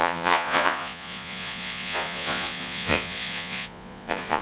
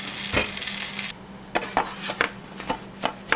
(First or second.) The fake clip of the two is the first